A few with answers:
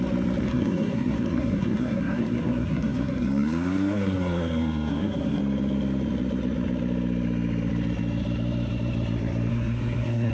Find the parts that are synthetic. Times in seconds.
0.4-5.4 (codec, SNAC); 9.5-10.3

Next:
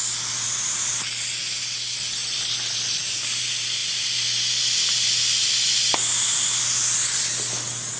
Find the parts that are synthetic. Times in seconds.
none

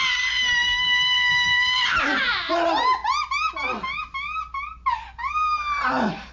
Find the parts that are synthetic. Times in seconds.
0.0-3.0 (vocoder, BigVGAN v2); 5.3-6.3

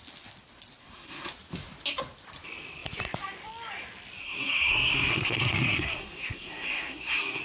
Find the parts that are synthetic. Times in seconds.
0.8-1.3 (codec, SNAC); 4.2-7.4

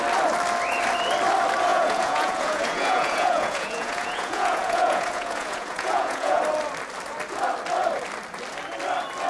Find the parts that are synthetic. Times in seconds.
1.7-6.4 (vocoder, Vocos)

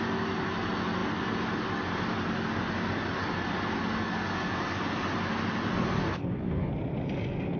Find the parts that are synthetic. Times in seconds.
6.0-6.7 (codec, DAC)